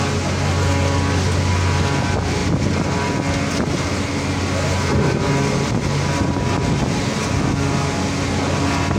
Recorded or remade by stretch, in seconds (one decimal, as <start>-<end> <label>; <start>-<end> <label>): 0.0-9.0 recorded